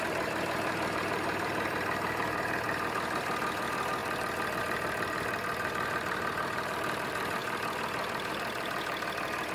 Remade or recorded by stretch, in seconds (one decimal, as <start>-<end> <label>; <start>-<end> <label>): 0.0-4.0 remade; 4.0-4.6 recorded; 4.6-9.5 remade